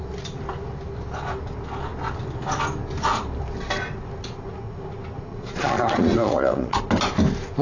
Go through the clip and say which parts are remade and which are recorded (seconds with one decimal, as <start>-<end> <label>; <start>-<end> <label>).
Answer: 0.0-5.3 recorded; 5.3-6.8 remade; 6.8-7.6 recorded